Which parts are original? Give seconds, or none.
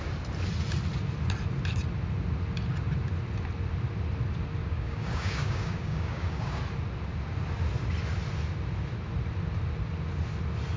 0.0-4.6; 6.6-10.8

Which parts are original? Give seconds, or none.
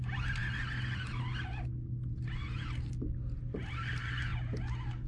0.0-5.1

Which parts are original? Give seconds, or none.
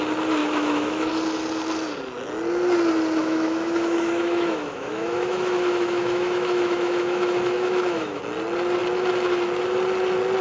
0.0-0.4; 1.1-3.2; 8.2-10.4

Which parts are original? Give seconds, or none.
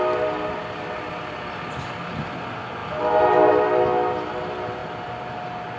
0.0-5.8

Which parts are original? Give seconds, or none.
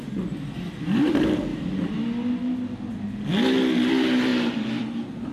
1.5-3.9; 4.3-4.8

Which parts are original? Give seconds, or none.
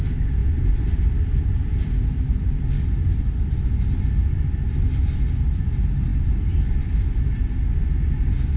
0.0-0.4; 2.7-8.6